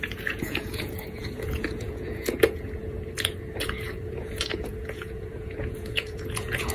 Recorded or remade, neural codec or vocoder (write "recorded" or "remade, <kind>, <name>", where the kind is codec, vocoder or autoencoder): remade, vocoder, Vocos